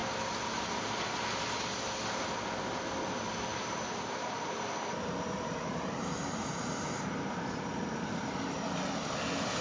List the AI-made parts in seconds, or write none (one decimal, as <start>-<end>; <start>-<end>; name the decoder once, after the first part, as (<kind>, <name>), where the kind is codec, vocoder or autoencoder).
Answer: 3.5-8.7 (vocoder, BigVGAN v2)